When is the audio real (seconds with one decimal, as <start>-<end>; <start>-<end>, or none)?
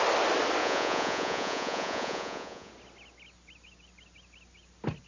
0.0-0.6; 2.7-5.1